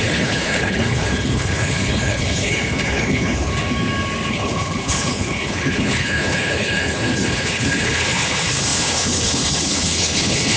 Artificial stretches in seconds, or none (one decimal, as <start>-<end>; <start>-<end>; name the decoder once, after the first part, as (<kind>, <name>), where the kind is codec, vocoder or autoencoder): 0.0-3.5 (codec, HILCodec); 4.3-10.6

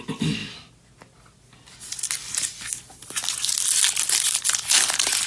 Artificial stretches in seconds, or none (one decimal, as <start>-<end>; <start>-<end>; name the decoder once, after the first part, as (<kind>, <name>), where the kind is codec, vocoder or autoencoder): none

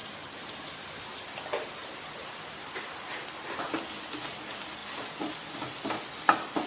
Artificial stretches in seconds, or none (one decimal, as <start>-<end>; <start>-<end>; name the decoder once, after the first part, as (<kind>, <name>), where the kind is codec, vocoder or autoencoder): none

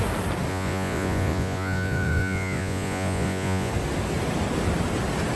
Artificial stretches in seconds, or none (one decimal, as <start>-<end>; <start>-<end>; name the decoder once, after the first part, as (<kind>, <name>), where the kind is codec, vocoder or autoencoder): 0.5-3.7 (vocoder, Vocos)

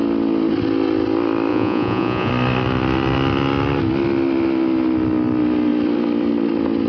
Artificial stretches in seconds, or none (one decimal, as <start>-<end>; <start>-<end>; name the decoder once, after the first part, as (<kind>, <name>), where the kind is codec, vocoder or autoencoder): 1.5-2.3 (vocoder, Vocos)

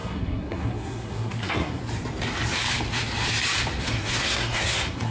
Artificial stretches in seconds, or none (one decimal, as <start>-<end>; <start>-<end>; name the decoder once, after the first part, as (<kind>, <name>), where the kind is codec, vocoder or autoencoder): 0.0-1.8 (codec, SNAC); 3.8-5.1

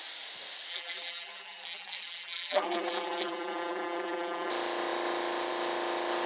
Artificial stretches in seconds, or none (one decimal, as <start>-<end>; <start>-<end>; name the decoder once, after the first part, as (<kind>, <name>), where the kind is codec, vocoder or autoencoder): 0.7-4.5 (vocoder, BigVGAN v2)

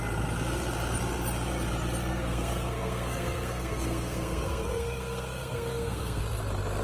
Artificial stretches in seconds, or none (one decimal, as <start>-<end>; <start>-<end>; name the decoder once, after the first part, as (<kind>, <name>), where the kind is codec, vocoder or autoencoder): 2.1-6.2 (codec, SNAC)